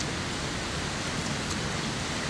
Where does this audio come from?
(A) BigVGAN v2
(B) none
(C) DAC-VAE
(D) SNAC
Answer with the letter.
B